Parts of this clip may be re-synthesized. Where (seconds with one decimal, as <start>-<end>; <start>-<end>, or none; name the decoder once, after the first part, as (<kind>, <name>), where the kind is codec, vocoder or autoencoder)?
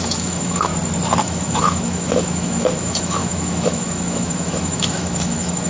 0.0-0.7 (autoencoder, DAC-VAE); 1.2-5.7